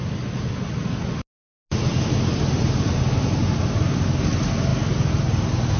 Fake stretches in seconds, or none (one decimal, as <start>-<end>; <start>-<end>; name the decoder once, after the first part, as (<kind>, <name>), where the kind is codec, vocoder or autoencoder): none

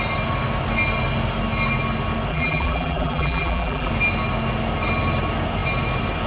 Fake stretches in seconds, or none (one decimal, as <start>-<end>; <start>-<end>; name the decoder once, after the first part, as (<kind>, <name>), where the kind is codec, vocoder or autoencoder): 2.3-3.9 (vocoder, BigVGAN v2)

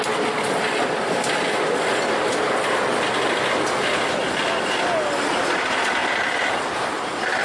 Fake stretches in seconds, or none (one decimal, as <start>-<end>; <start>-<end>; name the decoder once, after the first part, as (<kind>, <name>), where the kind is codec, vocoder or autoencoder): 6.0-6.6 (vocoder, BigVGAN v2)

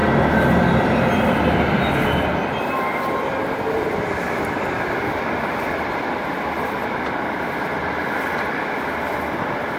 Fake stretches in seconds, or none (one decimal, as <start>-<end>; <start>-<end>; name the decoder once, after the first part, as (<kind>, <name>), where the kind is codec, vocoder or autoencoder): none

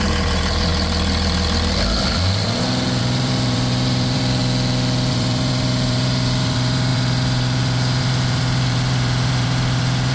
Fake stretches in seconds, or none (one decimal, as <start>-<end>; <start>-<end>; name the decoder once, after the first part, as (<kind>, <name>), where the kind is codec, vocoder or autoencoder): 0.0-0.7 (vocoder, BigVGAN v2); 3.0-4.4; 5.1-10.1

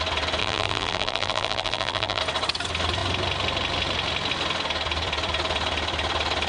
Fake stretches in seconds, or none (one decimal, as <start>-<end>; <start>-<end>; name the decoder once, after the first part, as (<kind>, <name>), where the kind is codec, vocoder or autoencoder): 0.4-2.2 (vocoder, BigVGAN v2)

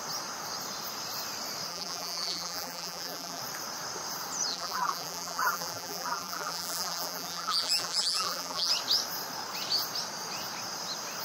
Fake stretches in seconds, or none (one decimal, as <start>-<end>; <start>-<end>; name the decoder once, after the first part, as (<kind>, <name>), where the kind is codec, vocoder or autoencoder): 1.7-3.4 (vocoder, BigVGAN v2); 4.5-8.7